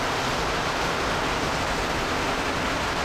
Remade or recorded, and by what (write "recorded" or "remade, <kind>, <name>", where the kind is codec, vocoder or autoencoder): recorded